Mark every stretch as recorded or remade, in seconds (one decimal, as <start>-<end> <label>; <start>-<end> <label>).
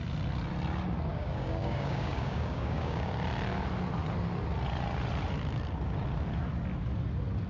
0.0-1.1 recorded; 1.1-3.1 remade; 3.1-7.5 recorded